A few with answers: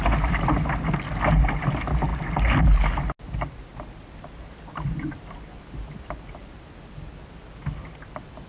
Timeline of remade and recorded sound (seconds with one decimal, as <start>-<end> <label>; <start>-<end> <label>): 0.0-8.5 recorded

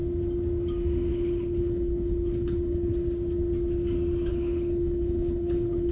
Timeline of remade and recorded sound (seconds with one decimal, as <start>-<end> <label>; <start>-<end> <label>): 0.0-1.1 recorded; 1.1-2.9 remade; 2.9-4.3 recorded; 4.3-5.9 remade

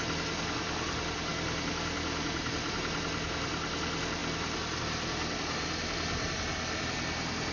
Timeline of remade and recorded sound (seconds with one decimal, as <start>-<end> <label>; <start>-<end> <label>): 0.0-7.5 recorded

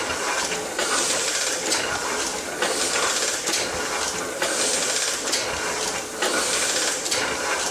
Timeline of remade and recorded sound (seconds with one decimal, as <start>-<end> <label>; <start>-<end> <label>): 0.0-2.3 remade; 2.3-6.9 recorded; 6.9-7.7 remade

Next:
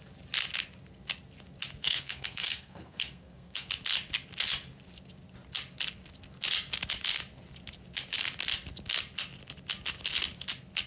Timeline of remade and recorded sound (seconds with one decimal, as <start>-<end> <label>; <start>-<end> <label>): 0.0-1.8 recorded; 1.8-3.7 remade; 3.7-10.9 recorded